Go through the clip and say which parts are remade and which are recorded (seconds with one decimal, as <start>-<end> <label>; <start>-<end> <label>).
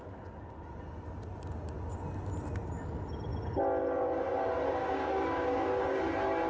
0.0-4.8 recorded; 4.8-6.0 remade; 6.0-6.5 recorded